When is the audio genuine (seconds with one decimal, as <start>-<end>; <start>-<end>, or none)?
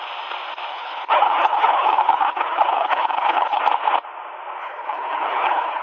0.0-0.7; 3.6-4.6